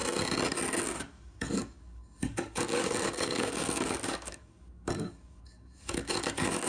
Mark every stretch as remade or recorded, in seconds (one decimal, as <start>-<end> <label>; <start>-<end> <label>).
0.0-0.8 recorded; 0.8-6.7 remade

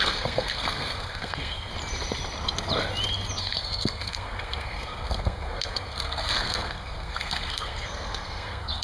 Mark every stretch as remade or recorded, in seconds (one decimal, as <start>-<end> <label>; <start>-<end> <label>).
0.0-1.7 remade; 1.7-3.4 recorded; 3.4-8.8 remade